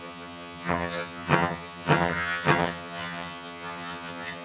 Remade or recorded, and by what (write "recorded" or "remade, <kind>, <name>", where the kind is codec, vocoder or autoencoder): remade, vocoder, HiFi-GAN